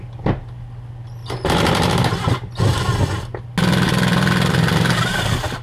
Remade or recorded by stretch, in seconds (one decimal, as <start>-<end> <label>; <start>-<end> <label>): 0.0-5.6 recorded

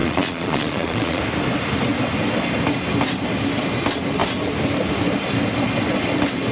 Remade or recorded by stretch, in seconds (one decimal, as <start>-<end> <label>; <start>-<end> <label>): 0.0-1.2 remade; 1.2-6.5 recorded

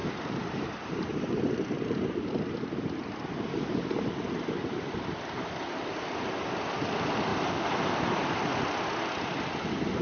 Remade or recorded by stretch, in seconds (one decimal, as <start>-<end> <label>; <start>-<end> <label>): 0.0-2.5 remade; 2.5-7.3 recorded; 7.3-8.1 remade; 8.1-10.0 recorded

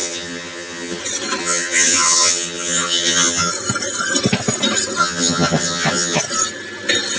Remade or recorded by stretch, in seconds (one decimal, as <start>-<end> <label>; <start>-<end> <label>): 0.0-1.0 remade; 1.0-1.4 recorded; 1.4-3.5 remade; 3.5-5.0 recorded; 5.0-6.2 remade; 6.2-7.2 recorded

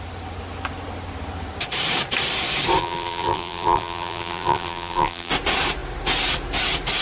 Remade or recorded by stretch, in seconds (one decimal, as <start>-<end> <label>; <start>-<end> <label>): 0.0-2.8 recorded; 2.8-5.3 remade; 5.3-7.0 recorded

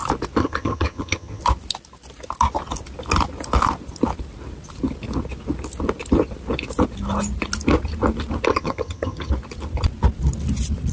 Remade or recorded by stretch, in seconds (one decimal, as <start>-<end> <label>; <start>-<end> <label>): 0.0-0.4 recorded; 0.4-1.4 remade; 1.4-8.5 recorded; 8.5-9.3 remade; 9.3-10.9 recorded